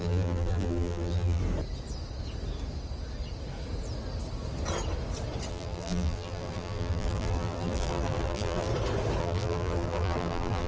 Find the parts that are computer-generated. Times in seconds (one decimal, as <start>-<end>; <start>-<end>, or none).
0.0-1.4; 5.5-8.7; 9.2-10.7